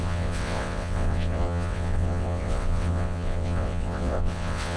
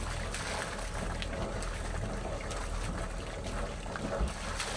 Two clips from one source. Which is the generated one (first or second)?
first